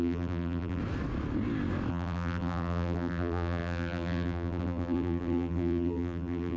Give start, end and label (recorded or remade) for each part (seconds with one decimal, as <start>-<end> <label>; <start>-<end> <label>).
0.0-0.8 remade; 0.8-1.9 recorded; 1.9-6.6 remade